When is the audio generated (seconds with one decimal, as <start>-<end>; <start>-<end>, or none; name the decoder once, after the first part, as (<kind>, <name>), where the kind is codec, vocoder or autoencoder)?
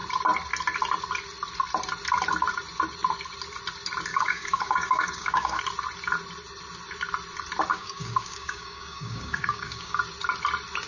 4.1-5.6 (codec, DAC); 7.7-10.0